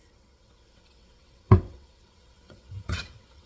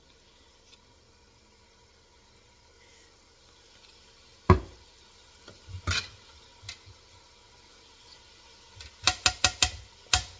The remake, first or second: first